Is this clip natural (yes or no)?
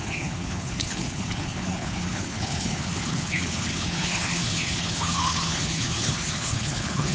no